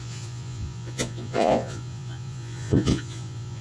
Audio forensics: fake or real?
fake